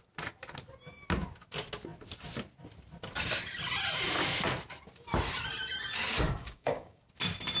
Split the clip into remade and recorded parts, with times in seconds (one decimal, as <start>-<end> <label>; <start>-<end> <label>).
0.0-6.4 recorded; 6.4-7.0 remade; 7.0-7.6 recorded